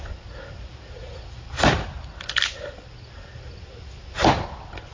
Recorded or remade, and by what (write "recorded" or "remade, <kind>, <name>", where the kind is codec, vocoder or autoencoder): recorded